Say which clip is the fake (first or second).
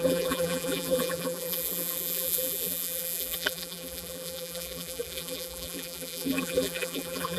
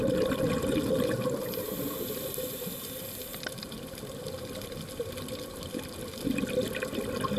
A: first